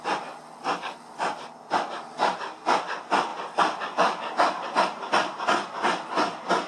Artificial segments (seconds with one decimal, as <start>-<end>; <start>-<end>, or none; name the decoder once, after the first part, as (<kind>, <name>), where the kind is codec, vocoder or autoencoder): none